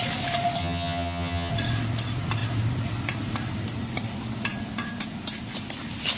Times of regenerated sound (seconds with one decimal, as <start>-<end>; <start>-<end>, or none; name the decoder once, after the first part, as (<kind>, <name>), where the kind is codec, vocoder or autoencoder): 0.6-1.5 (vocoder, HiFi-GAN)